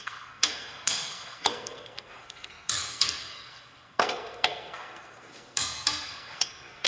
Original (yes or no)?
no